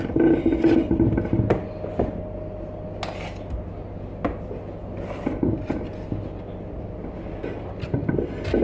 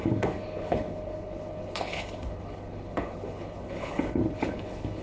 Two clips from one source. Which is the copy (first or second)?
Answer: second